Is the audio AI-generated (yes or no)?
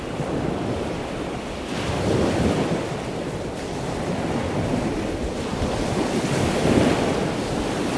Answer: no